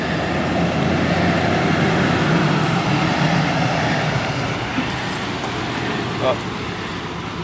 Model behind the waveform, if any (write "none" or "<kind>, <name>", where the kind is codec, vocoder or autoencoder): none